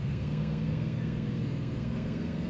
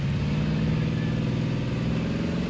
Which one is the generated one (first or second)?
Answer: first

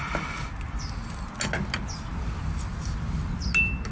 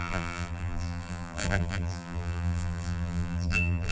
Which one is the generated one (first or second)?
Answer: second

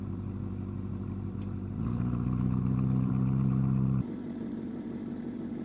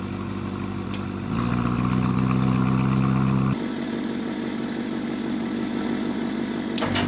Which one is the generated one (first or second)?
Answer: first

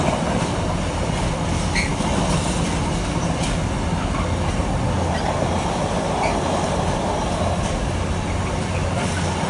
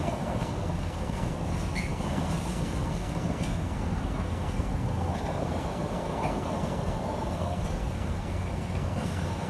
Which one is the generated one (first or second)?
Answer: second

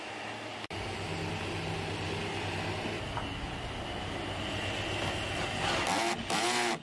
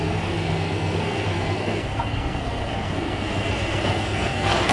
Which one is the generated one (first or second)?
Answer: second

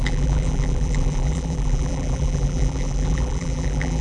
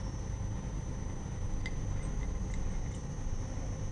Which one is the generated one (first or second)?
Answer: first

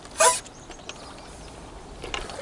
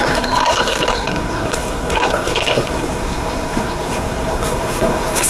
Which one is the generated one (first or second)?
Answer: second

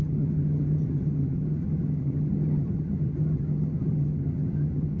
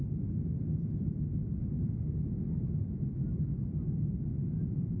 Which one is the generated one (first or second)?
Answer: first